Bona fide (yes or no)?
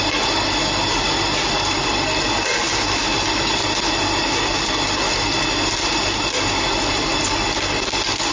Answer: yes